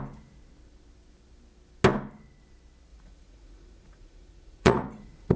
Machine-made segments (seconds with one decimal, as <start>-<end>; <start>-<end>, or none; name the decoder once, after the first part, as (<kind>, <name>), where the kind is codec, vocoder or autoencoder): 2.9-5.4 (vocoder, Vocos)